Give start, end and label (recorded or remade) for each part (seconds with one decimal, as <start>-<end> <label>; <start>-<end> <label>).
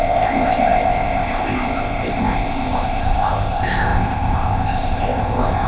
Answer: 0.0-5.7 remade